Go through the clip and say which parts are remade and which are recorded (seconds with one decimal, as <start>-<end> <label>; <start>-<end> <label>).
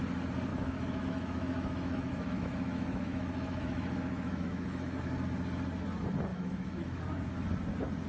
0.0-0.5 recorded; 0.5-5.0 remade; 5.0-6.3 recorded; 6.3-7.0 remade; 7.0-8.1 recorded